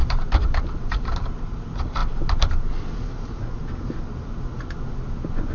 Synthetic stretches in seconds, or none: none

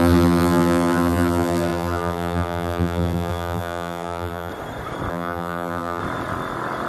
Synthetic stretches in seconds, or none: 0.0-4.5 (vocoder, BigVGAN v2); 5.1-6.0

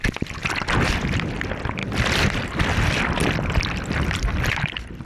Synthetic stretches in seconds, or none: 1.8-5.1 (vocoder, BigVGAN v2)

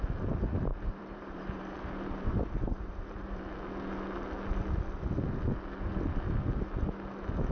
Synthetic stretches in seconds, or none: 0.7-3.4 (vocoder, BigVGAN v2)

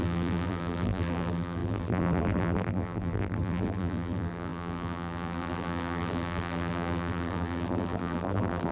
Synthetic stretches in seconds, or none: 0.0-8.7 (vocoder, BigVGAN v2)